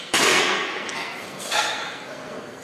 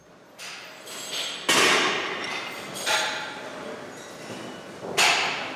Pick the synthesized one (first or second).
first